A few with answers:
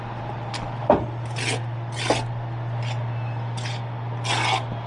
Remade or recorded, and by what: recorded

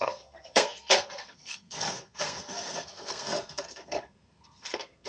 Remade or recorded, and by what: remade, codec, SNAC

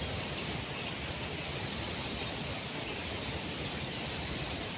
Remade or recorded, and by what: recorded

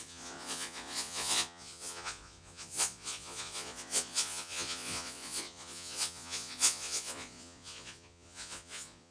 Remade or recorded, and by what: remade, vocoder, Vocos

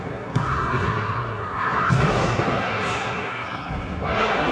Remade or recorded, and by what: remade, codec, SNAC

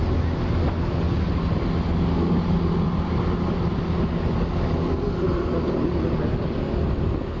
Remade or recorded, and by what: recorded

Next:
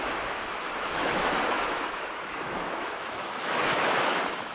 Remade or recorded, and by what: remade, autoencoder, DAC-VAE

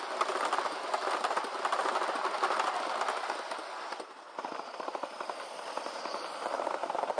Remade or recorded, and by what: recorded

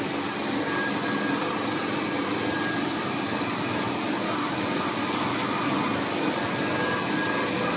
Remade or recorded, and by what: remade, vocoder, BigVGAN v2